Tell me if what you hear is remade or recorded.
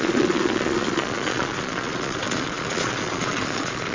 remade